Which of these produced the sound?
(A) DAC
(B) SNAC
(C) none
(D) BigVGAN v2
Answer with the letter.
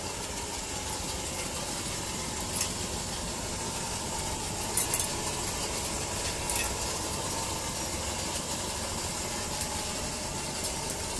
C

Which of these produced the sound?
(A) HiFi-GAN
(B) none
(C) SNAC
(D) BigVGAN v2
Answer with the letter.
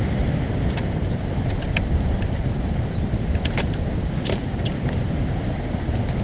D